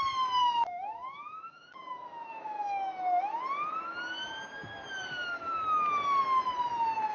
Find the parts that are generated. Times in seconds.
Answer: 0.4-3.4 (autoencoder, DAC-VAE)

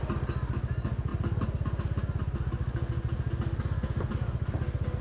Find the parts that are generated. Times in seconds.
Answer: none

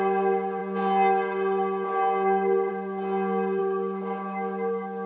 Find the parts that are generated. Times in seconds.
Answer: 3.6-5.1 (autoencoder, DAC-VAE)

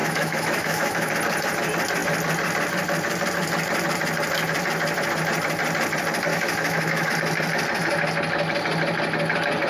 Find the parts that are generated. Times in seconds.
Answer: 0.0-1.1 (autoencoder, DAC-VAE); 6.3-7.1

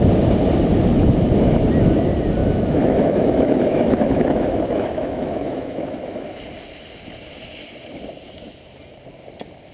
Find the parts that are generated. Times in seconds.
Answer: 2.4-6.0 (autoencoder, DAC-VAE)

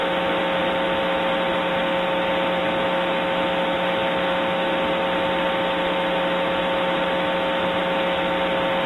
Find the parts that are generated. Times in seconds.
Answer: none

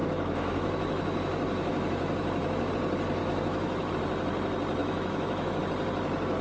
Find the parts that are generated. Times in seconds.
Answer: 0.0-2.7 (autoencoder, DAC-VAE); 3.2-3.9; 4.8-5.6

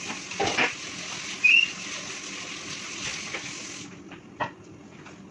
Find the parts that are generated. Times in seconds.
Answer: none